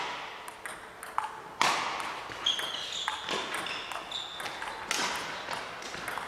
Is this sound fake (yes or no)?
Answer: no